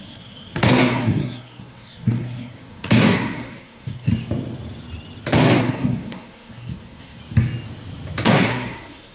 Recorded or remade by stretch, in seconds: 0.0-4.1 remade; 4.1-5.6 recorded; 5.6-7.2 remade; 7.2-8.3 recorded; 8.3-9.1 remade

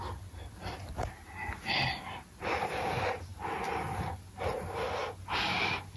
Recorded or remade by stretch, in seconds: 0.0-6.0 recorded

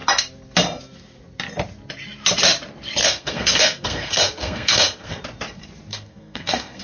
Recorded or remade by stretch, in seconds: 0.0-3.0 recorded; 3.0-5.2 remade; 5.2-5.9 recorded; 5.9-6.8 remade

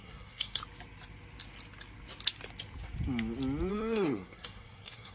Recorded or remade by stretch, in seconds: 0.0-0.6 remade; 0.6-3.7 recorded; 3.7-5.1 remade

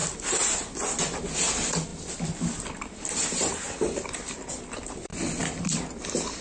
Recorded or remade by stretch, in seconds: 0.0-6.4 recorded

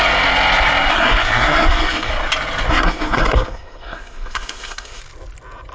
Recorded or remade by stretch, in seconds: 0.0-0.9 recorded; 0.9-2.1 remade; 2.1-2.7 recorded; 2.7-5.0 remade; 5.0-5.7 recorded